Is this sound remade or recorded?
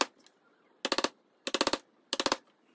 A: recorded